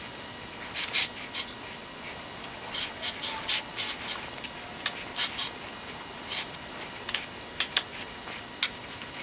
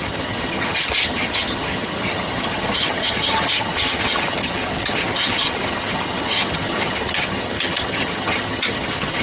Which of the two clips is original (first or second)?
first